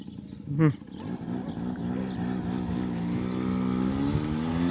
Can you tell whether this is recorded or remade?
recorded